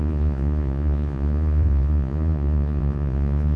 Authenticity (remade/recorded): remade